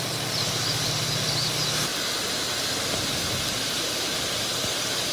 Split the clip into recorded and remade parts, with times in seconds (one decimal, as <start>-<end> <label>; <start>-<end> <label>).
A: 0.0-5.1 recorded